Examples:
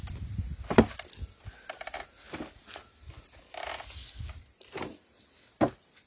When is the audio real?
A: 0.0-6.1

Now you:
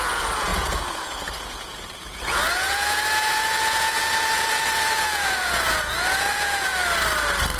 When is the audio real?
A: 6.7-7.6

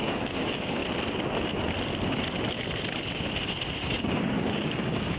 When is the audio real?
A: 0.8-3.9

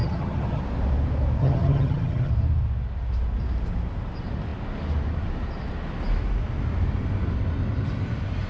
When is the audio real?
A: 0.6-1.4; 2.3-8.5